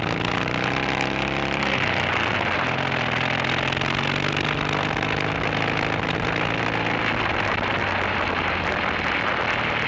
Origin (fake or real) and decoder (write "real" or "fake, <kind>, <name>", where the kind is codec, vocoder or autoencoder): real